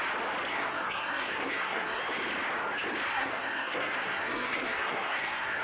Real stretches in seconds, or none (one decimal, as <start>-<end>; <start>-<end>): 0.0-0.5; 2.0-3.1